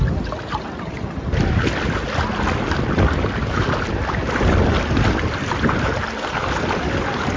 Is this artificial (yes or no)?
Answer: no